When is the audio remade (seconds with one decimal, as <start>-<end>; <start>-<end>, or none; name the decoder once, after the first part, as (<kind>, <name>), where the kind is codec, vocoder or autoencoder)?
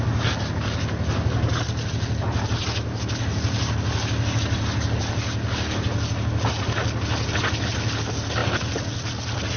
none